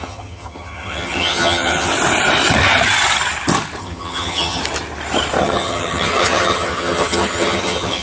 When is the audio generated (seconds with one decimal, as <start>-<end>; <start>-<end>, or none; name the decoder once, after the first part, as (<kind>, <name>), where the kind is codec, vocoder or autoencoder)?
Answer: 0.0-1.9 (vocoder, HiFi-GAN); 3.8-4.6; 5.4-8.0